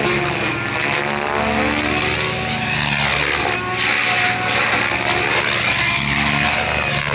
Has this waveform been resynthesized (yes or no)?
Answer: no